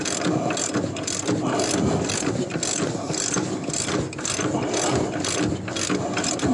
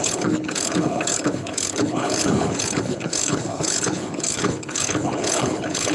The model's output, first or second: second